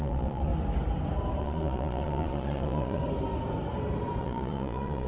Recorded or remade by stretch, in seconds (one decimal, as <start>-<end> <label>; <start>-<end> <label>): 0.0-0.5 remade; 0.5-1.4 recorded; 1.4-3.0 remade; 3.0-4.2 recorded; 4.2-5.1 remade